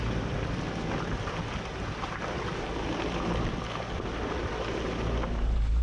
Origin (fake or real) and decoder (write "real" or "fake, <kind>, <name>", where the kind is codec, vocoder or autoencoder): real